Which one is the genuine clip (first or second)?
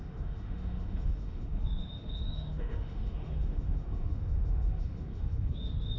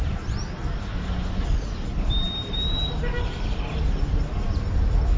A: second